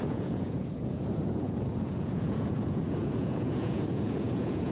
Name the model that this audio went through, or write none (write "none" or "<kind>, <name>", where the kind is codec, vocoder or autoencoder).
vocoder, Vocos